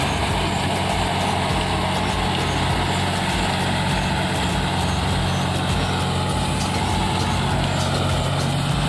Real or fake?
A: real